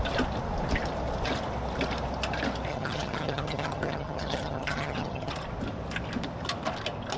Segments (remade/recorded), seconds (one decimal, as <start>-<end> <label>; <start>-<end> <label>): 0.0-2.7 recorded; 2.7-5.3 remade; 5.3-7.2 recorded